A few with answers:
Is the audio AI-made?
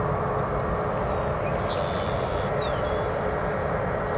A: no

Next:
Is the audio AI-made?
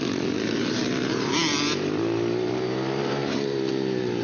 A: yes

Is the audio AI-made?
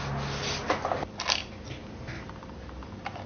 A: no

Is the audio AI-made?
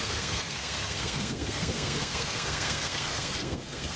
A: yes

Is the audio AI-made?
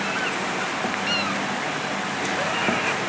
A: no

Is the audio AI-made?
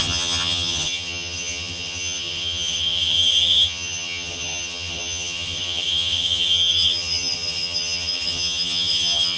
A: yes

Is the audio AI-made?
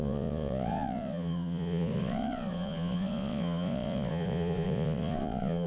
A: yes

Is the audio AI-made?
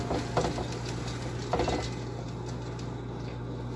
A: no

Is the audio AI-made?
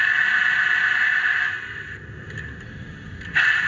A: no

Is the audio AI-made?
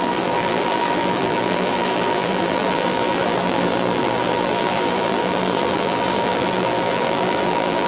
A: yes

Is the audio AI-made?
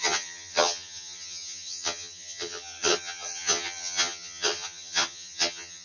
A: yes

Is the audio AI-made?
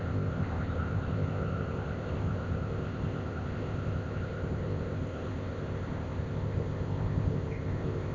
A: yes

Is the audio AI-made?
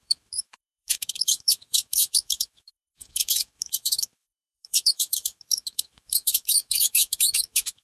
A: yes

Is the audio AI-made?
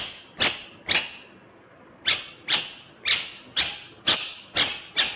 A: no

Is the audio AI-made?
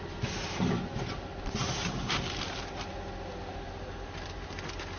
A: no